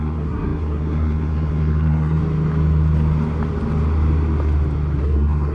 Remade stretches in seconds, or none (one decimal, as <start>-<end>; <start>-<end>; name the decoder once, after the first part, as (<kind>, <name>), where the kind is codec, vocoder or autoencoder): 0.0-2.2 (codec, SNAC); 5.0-5.5